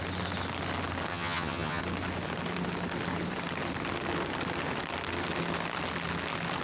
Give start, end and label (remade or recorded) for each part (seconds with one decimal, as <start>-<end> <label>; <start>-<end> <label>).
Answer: 0.0-1.1 recorded; 1.1-1.8 remade; 1.8-6.6 recorded